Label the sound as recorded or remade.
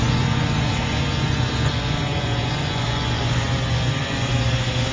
remade